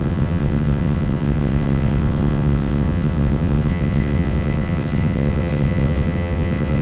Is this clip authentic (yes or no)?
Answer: no